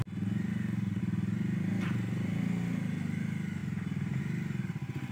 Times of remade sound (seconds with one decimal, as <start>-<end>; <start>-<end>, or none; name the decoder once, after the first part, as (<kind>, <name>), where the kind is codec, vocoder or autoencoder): 0.5-1.0 (autoencoder, DAC-VAE)